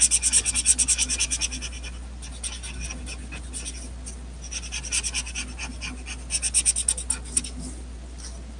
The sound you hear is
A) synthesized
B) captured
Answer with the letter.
B